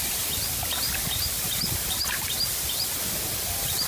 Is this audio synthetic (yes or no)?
no